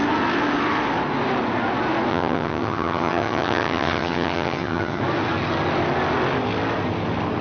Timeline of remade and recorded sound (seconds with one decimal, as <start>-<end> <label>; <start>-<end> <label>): 0.0-2.1 recorded; 2.1-5.0 remade; 5.0-7.4 recorded